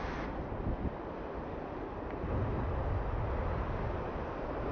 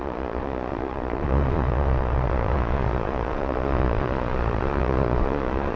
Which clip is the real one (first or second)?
first